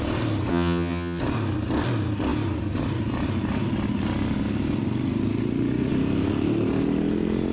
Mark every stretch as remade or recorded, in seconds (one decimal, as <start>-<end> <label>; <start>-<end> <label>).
0.0-0.5 recorded; 0.5-1.2 remade; 1.2-7.5 recorded